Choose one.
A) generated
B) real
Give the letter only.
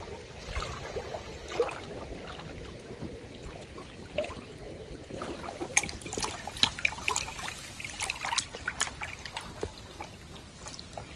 B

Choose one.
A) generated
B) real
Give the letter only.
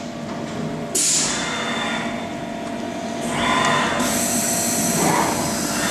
B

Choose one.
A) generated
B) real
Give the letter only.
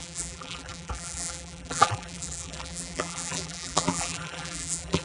A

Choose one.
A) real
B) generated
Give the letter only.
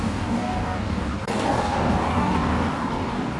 B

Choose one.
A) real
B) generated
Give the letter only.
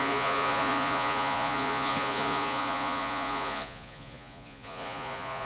B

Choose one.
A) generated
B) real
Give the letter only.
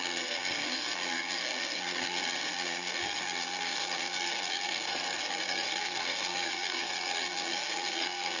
A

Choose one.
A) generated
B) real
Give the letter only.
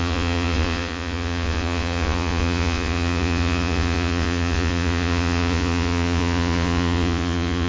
A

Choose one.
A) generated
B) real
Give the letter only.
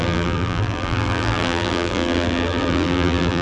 A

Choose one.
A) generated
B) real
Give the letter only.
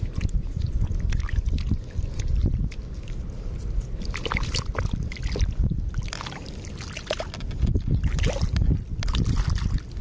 B